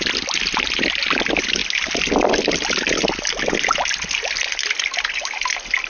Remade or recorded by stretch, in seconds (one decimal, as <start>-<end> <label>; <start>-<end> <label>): 0.0-5.9 recorded